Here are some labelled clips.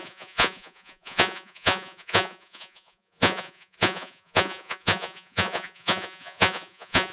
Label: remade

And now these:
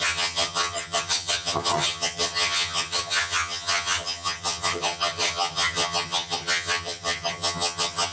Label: remade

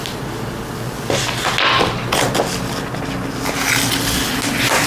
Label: recorded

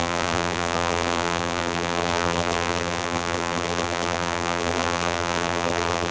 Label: remade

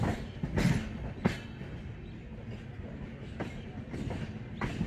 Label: recorded